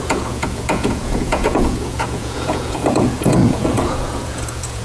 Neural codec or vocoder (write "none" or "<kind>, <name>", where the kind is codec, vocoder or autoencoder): vocoder, Vocos